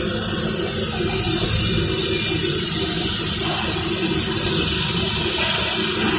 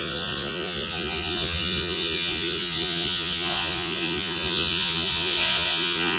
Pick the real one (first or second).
first